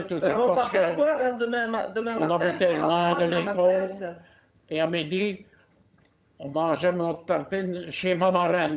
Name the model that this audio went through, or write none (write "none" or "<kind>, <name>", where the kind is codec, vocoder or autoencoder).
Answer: vocoder, HiFi-GAN